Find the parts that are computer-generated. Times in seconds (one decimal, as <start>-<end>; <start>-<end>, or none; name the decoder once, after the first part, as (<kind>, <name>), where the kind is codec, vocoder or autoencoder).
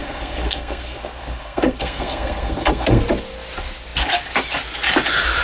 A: 0.0-3.0 (codec, SNAC)